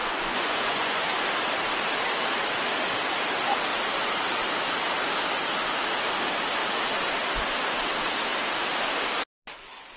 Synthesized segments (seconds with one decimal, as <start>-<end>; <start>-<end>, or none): 0.0-1.0